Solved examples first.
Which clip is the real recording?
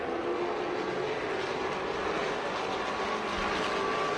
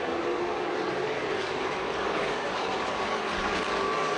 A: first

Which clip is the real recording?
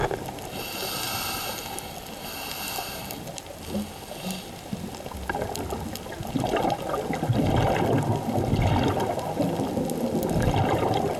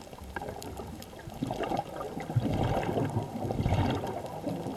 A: first